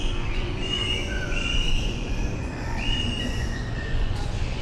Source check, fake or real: fake